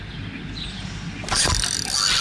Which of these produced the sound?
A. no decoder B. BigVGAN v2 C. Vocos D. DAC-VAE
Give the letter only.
A